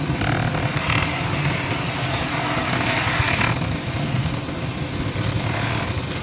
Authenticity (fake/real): real